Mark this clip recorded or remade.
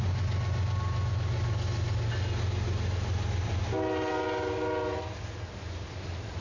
recorded